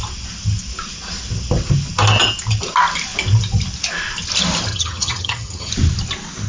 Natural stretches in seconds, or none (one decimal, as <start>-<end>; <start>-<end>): 0.0-4.7; 5.7-6.5